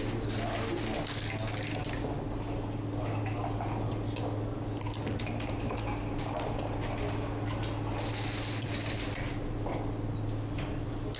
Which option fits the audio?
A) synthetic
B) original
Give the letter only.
B